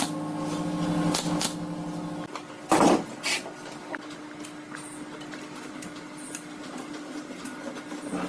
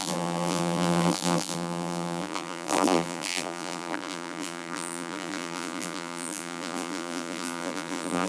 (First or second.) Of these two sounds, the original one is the first